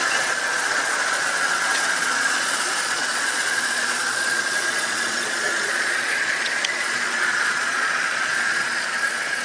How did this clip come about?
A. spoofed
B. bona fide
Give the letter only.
A